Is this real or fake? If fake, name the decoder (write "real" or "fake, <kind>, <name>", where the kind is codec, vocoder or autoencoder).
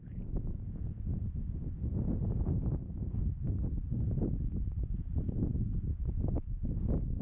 fake, vocoder, Vocos